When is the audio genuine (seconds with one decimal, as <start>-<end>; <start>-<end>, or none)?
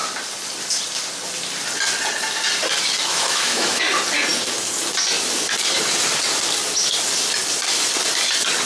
0.0-3.1; 3.8-8.7